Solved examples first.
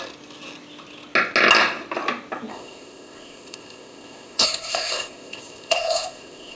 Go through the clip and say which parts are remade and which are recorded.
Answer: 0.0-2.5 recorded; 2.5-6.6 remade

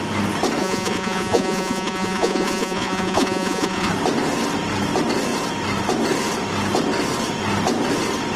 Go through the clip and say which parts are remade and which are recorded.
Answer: 0.0-0.6 recorded; 0.6-3.9 remade; 3.9-8.4 recorded